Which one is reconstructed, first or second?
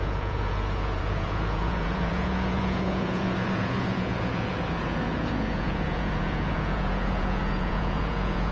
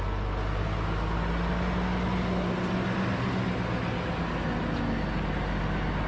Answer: first